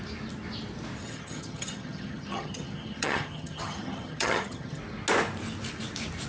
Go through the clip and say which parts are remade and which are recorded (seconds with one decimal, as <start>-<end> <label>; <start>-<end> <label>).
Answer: 0.0-1.0 recorded; 1.0-4.8 remade; 4.8-6.3 recorded